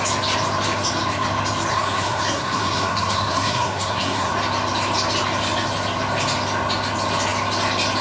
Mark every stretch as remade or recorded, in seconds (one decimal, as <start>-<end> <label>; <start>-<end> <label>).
0.0-1.7 recorded; 1.7-4.3 remade; 4.3-8.0 recorded